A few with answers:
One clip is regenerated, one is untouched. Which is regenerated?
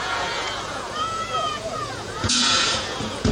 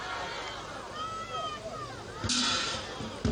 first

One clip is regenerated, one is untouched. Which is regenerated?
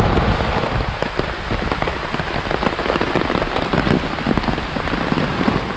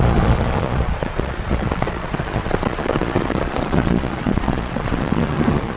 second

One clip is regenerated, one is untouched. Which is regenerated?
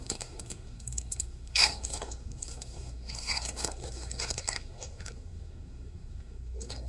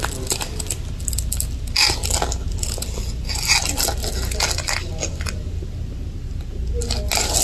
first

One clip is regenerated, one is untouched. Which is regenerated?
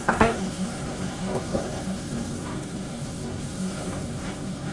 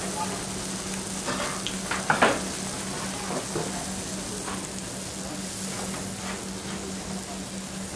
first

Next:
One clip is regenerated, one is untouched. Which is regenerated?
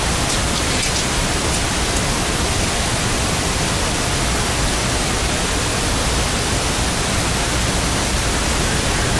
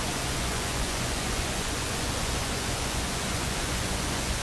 second